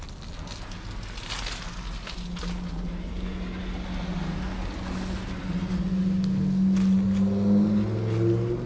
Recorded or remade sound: recorded